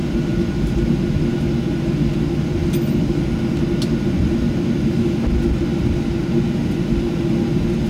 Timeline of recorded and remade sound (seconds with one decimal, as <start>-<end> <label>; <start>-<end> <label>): 0.0-7.9 recorded